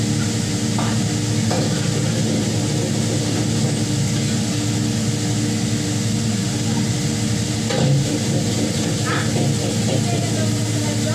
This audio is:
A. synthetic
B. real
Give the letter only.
B